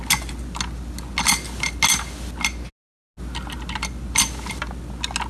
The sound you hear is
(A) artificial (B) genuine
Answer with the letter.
B